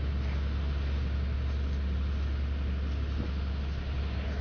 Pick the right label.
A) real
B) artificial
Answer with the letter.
A